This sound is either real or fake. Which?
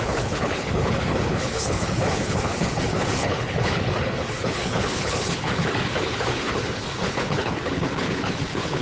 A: fake